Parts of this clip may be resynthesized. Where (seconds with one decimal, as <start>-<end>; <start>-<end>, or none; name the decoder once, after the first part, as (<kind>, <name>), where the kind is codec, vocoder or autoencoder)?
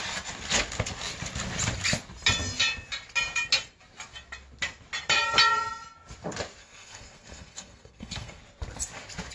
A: 6.6-8.4 (codec, SNAC)